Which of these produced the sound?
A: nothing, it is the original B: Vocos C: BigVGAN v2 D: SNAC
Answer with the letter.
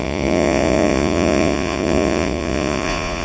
B